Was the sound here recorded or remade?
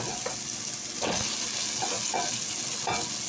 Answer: recorded